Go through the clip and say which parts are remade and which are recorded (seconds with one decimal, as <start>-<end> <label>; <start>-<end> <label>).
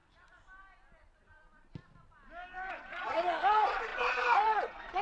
0.0-2.7 recorded; 2.7-5.0 remade